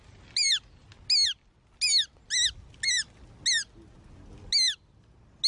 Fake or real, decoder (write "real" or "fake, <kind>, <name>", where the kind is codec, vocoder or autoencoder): real